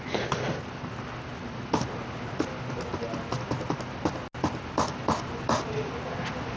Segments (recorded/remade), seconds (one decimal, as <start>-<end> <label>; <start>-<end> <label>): 0.0-6.6 recorded